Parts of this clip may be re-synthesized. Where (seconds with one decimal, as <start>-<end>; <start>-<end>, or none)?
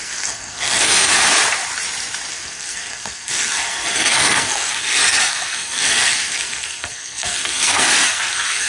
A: 0.0-1.1; 2.3-8.7